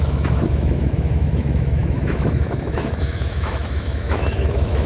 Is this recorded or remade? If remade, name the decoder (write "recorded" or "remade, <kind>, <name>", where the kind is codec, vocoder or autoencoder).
remade, autoencoder, DAC-VAE